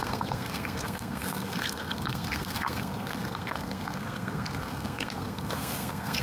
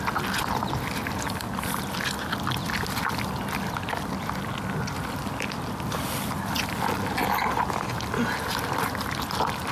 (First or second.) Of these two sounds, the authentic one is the second